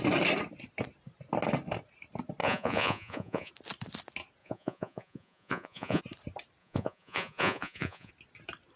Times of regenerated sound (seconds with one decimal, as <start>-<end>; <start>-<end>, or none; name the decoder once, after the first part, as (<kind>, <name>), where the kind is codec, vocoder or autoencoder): 2.4-3.5 (vocoder, Vocos); 4.4-6.0; 6.6-8.1